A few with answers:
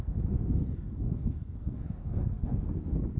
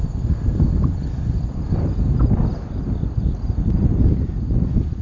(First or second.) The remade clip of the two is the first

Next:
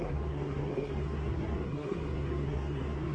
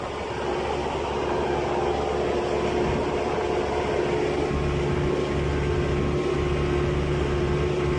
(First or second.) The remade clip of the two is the first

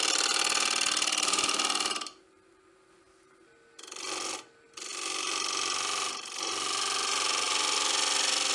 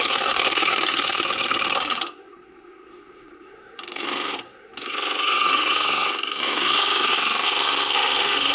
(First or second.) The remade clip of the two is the second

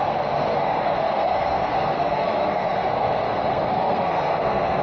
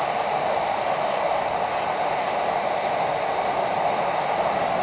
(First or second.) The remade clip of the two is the first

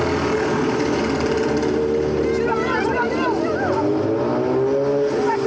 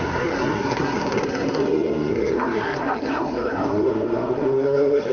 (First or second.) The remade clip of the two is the second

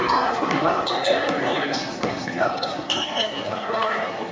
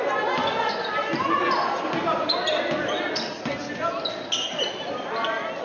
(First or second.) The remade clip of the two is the first